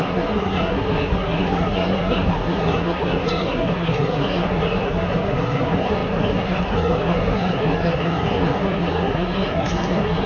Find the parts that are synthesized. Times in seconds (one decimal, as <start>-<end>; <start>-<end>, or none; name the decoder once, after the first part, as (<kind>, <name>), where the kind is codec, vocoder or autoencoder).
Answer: 0.0-10.3 (codec, SNAC)